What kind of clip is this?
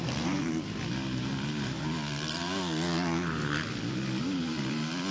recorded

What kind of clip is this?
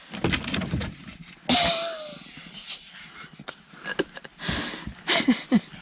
recorded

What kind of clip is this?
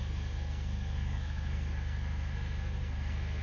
remade